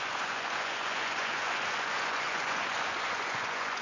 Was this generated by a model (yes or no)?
yes